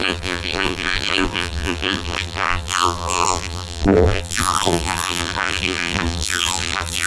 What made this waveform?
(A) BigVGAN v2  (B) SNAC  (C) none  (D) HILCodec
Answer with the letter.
A